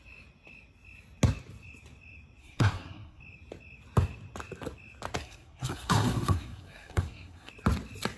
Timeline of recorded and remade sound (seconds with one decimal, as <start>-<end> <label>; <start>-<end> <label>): 0.0-2.4 recorded; 2.4-3.2 remade; 3.2-5.2 recorded; 5.2-7.5 remade; 7.5-8.2 recorded